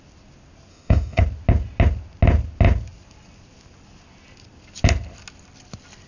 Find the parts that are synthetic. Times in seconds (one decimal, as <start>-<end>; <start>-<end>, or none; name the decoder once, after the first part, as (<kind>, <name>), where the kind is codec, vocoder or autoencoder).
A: 0.7-1.2 (autoencoder, DAC-VAE)